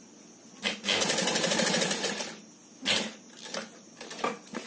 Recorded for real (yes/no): yes